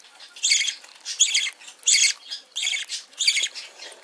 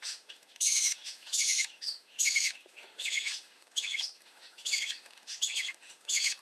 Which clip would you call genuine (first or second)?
first